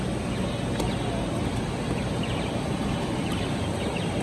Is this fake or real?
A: real